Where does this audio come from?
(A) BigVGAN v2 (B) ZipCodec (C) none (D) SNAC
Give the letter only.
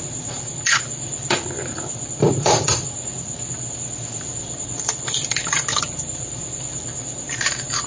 A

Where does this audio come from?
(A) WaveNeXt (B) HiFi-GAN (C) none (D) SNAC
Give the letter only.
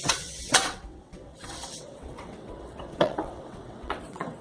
A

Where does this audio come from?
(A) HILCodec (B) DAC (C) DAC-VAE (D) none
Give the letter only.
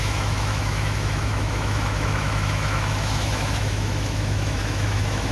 C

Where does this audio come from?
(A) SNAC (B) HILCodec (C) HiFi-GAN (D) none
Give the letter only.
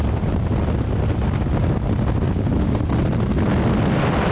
D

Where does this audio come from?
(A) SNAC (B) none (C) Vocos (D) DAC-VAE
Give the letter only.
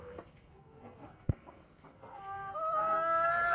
A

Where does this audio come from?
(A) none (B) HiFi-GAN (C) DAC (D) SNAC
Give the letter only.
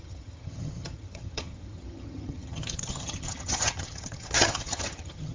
B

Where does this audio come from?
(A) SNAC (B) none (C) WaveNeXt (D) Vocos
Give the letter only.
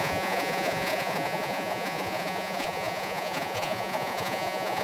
D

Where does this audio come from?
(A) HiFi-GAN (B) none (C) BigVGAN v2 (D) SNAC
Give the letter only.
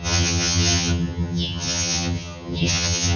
A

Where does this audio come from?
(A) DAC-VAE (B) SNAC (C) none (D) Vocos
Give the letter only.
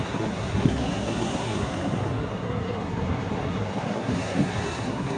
B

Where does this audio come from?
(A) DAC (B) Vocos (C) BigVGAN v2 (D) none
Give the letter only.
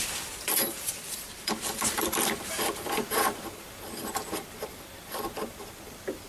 C